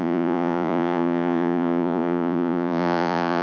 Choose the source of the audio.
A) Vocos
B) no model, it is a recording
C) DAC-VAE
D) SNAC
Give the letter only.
A